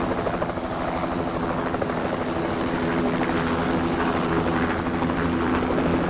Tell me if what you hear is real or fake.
real